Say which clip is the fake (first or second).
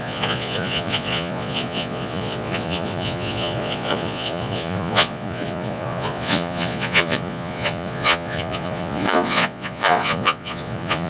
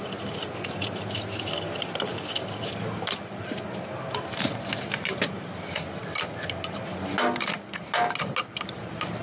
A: first